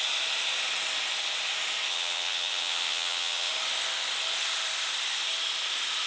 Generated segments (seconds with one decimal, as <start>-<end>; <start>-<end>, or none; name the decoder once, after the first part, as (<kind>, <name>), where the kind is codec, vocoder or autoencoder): 1.9-3.5 (vocoder, HiFi-GAN)